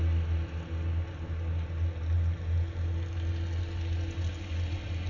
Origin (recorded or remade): recorded